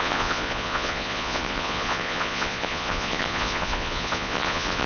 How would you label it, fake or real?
fake